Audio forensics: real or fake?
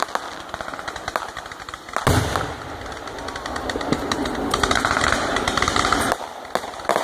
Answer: real